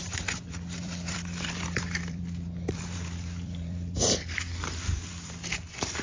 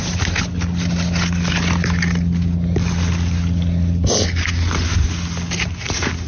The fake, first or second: first